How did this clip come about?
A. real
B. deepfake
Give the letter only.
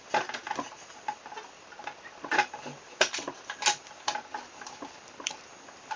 B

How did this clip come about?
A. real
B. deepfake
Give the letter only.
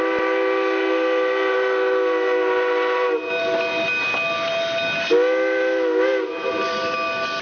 A